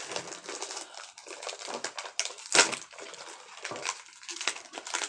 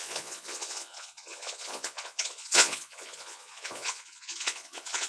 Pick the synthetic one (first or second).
second